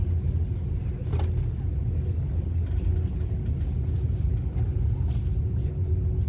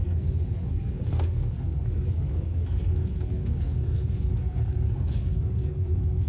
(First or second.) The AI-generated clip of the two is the second